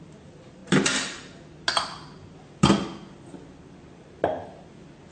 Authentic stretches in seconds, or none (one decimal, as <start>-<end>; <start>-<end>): 0.0-5.1